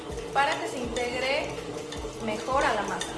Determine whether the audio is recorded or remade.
recorded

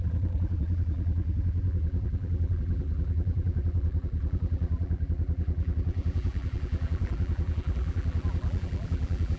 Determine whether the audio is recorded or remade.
remade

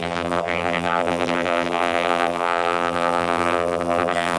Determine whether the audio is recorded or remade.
remade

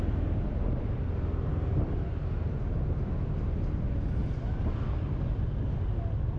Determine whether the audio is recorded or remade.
recorded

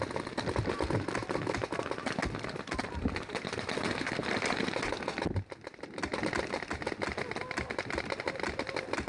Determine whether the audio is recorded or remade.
recorded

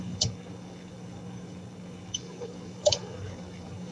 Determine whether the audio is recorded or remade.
remade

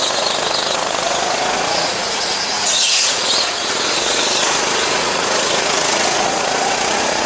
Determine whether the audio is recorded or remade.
remade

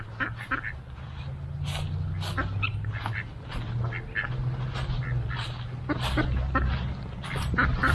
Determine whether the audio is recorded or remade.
recorded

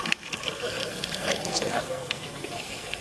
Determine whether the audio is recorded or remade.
remade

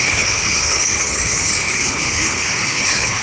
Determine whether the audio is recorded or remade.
remade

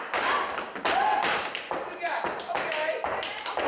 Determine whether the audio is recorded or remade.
recorded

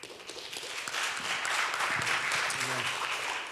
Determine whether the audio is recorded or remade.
recorded